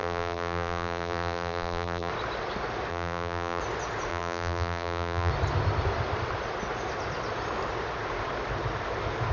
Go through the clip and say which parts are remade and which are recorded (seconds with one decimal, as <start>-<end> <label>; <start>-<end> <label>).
0.0-2.1 remade; 2.1-2.9 recorded; 2.9-3.6 remade; 3.6-4.1 recorded; 4.1-5.3 remade; 5.3-9.3 recorded